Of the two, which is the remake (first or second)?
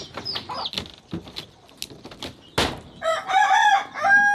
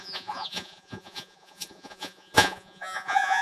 second